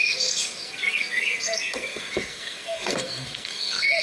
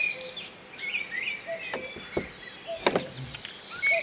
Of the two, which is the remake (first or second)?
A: first